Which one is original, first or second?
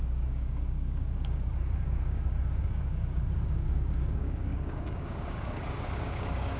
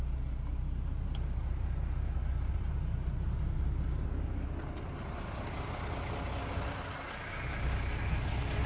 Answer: second